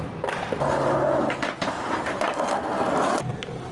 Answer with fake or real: real